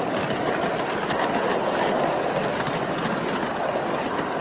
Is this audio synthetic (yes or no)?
no